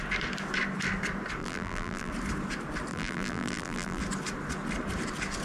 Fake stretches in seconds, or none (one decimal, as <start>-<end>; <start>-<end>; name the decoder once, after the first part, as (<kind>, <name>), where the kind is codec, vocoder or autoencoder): 1.4-2.1 (vocoder, BigVGAN v2); 2.9-4.0